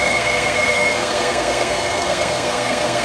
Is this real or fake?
fake